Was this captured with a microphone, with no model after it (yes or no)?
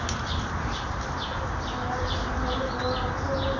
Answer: yes